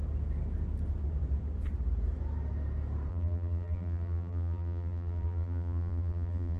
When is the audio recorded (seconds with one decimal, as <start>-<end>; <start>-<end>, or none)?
0.0-3.1

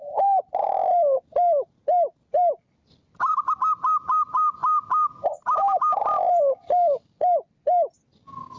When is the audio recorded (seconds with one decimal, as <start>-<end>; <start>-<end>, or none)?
0.0-8.6